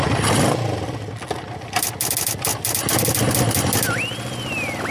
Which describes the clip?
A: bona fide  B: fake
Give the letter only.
A